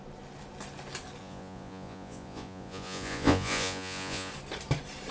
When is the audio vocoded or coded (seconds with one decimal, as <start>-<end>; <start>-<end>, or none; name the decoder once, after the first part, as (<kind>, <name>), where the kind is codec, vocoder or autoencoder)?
1.2-4.3 (vocoder, Vocos)